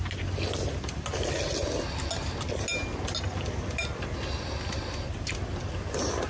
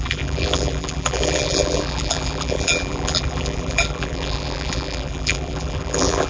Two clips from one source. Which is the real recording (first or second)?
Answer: first